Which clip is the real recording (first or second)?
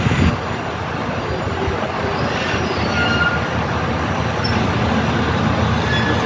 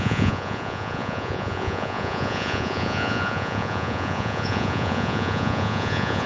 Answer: first